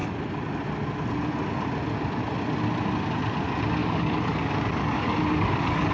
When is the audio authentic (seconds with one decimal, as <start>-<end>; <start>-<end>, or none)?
0.0-3.8